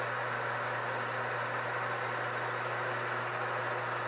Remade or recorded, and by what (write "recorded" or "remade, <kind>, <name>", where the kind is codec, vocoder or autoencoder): recorded